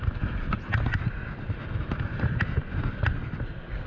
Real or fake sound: real